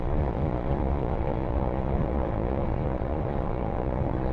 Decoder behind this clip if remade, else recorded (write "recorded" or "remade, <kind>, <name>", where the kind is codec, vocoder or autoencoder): remade, vocoder, Vocos